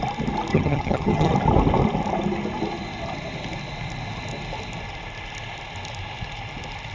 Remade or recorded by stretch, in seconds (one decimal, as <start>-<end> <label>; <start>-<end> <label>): 0.0-0.5 recorded; 0.5-1.3 remade; 1.3-6.9 recorded